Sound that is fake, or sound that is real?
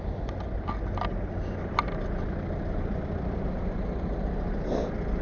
real